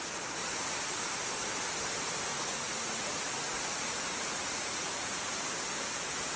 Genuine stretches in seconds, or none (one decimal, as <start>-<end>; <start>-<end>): 0.0-0.4; 1.0-2.3; 5.5-6.4